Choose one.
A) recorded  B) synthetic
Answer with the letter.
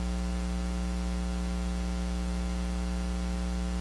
A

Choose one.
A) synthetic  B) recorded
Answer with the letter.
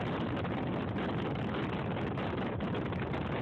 B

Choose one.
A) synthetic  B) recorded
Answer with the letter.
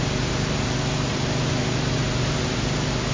B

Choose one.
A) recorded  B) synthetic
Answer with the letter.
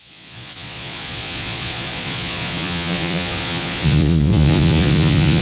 B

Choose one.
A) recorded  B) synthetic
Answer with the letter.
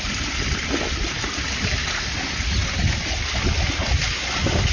A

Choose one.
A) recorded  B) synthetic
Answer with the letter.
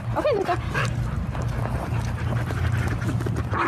A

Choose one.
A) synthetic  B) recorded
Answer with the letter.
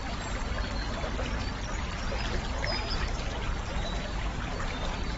B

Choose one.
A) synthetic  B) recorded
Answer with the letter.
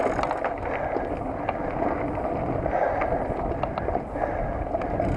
B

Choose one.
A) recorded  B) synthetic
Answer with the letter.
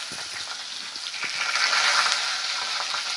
A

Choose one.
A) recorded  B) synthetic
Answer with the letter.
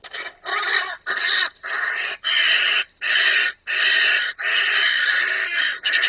A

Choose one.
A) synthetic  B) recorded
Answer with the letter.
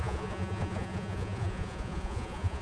A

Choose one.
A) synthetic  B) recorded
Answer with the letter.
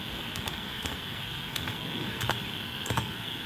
A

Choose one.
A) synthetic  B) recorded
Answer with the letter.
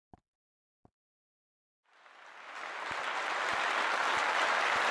B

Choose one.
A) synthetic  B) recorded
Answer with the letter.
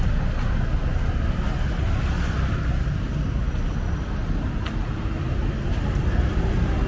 B